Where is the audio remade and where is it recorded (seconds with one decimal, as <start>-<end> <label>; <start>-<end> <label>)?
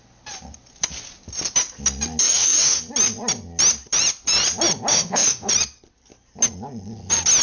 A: 0.0-2.2 recorded; 2.2-2.8 remade; 2.8-4.9 recorded; 4.9-5.5 remade; 5.5-7.4 recorded